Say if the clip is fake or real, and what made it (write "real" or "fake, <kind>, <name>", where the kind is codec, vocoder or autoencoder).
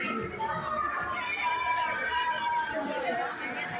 real